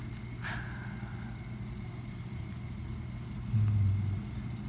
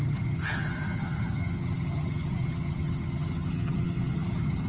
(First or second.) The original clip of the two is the first